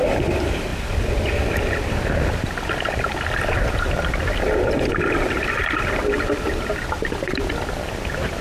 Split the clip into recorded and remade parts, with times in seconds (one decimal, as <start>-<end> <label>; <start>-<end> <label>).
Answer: 0.0-8.4 recorded